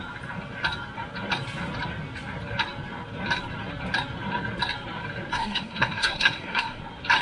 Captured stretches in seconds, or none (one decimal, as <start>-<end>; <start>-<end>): 0.0-5.3; 6.8-7.2

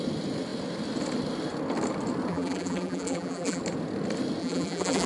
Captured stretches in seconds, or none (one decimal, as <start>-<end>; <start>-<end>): 0.0-2.3; 3.6-4.4

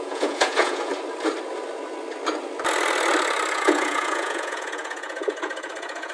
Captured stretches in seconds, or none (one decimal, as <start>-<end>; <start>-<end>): 0.9-3.5